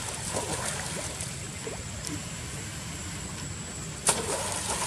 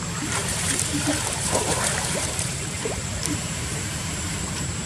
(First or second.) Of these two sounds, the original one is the first